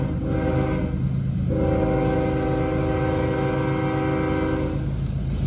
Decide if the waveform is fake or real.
real